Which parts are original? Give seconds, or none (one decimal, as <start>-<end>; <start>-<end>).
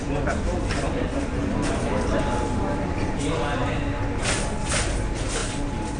0.0-6.0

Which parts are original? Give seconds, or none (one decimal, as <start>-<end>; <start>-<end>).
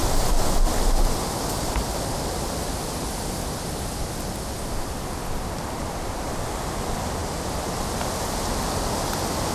0.0-9.5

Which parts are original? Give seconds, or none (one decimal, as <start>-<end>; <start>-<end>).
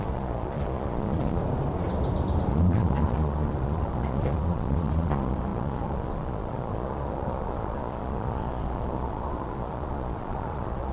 1.4-2.5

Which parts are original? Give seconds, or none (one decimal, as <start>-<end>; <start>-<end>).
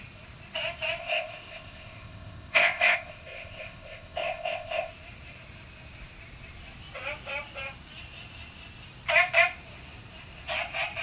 0.0-1.0; 4.9-11.0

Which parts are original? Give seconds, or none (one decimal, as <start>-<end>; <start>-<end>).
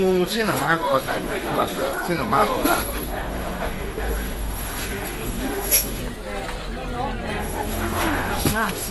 6.0-7.4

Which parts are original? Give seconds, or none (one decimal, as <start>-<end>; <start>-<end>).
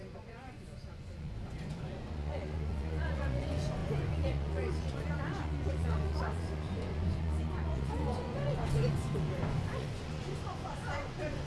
none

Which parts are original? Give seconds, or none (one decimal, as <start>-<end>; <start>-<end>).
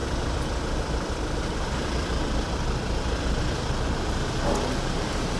none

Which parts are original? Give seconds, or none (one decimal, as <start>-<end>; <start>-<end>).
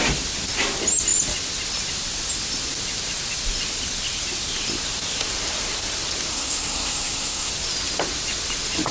0.0-6.3; 7.5-8.9